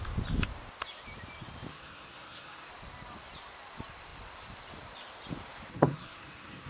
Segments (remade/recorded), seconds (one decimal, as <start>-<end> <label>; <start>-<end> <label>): 0.0-1.7 recorded; 1.7-2.7 remade; 2.7-5.7 recorded; 5.7-6.7 remade